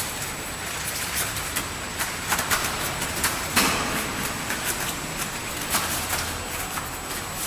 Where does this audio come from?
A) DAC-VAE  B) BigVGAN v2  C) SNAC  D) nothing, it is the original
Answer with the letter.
D